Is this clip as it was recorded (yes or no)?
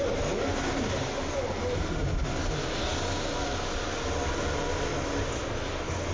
yes